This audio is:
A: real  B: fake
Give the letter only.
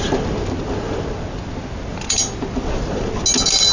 A